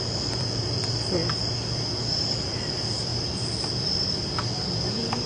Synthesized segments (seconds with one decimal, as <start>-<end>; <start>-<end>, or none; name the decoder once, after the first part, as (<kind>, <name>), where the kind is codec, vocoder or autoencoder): 0.0-1.2 (vocoder, BigVGAN v2); 2.2-5.3